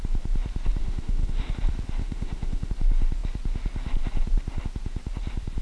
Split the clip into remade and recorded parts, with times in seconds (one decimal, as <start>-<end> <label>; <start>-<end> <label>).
0.0-0.8 recorded; 0.8-1.5 remade; 1.5-2.0 recorded; 2.0-2.7 remade; 2.7-5.6 recorded